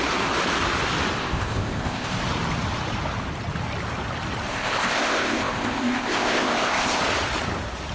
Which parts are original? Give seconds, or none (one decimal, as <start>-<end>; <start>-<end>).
0.0-1.2; 2.2-4.5; 7.0-7.9